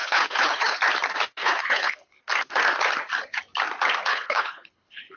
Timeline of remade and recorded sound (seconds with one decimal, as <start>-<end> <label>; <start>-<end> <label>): 0.0-0.8 remade; 0.8-1.4 recorded; 1.4-2.2 remade; 2.2-4.1 recorded; 4.1-5.2 remade